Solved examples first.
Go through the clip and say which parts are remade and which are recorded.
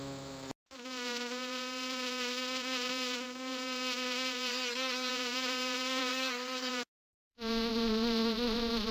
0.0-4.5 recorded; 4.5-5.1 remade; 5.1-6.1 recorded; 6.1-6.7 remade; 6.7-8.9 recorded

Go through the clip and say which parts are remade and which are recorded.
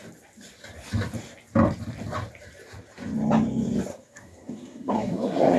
0.0-3.9 recorded; 3.9-5.6 remade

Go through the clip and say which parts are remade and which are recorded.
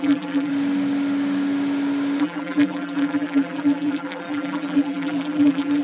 0.0-0.5 remade; 0.5-2.2 recorded; 2.2-5.8 remade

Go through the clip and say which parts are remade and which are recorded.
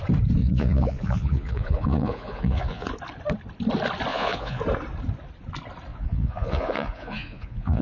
0.0-0.4 recorded; 0.4-2.9 remade; 2.9-4.1 recorded; 4.1-4.6 remade; 4.6-5.9 recorded; 5.9-7.8 remade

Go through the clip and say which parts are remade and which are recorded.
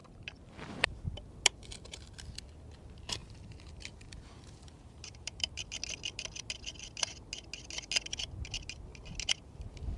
0.0-0.9 remade; 0.9-3.2 recorded; 3.2-5.7 remade; 5.7-10.0 recorded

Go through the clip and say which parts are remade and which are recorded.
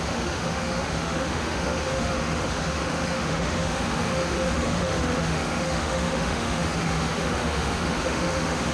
0.0-8.7 remade